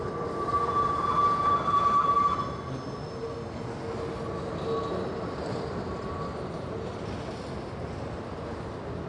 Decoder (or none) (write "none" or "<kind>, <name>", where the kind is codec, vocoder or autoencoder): none